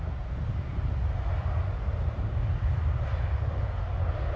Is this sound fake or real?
real